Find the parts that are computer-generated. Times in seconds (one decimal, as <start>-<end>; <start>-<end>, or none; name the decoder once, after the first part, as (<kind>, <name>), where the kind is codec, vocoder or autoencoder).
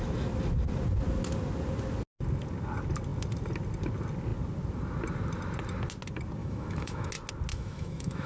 6.4-7.1 (autoencoder, DAC-VAE); 7.5-8.3